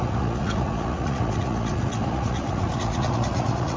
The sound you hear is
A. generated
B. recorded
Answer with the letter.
A